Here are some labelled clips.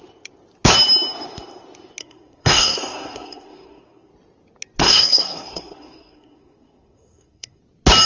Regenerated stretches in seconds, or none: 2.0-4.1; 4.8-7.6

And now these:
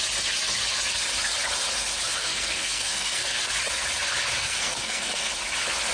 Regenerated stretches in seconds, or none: 2.2-3.5; 4.4-5.3

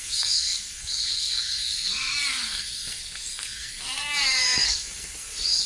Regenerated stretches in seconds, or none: 0.0-5.7